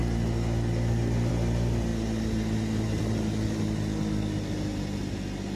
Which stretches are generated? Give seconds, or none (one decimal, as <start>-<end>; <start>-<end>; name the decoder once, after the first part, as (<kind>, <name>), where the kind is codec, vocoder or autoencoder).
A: none